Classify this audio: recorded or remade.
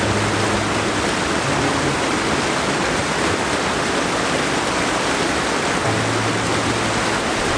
recorded